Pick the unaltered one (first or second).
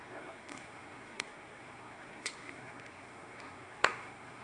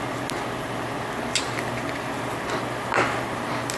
second